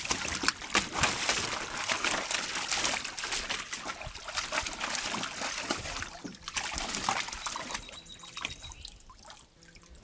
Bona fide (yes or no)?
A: yes